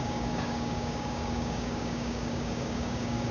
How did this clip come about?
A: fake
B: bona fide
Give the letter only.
A